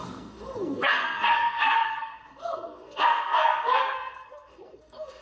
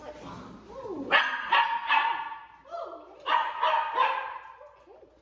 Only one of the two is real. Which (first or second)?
second